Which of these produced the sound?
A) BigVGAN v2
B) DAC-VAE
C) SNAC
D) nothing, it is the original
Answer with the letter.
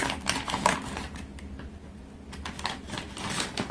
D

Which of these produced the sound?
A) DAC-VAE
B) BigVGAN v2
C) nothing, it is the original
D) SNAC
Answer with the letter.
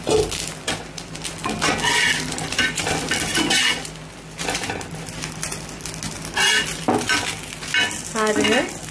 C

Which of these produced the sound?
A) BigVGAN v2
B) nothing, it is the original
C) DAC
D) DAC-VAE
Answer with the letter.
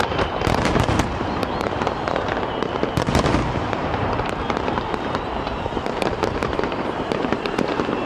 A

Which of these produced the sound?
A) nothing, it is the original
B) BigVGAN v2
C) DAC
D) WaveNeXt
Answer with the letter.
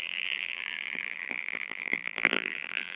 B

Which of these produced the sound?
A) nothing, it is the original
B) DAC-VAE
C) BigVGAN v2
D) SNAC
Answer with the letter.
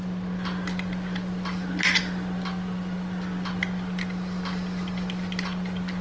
A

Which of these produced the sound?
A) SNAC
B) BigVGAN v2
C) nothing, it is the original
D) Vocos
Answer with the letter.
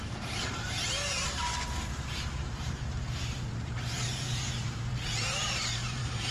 B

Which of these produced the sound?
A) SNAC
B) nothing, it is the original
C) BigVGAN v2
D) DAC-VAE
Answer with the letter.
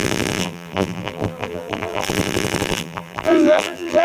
C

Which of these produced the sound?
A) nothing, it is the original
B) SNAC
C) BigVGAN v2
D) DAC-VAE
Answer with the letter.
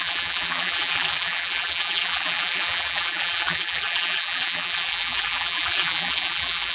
C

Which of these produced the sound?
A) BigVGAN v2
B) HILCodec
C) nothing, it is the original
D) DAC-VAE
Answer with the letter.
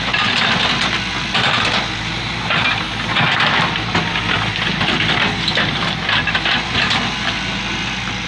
C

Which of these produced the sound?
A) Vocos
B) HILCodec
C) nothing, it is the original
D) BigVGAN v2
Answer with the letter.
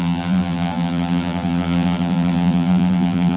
D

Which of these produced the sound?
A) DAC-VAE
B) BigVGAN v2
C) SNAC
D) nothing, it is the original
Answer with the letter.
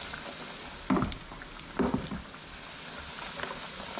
D